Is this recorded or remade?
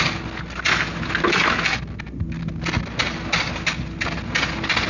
recorded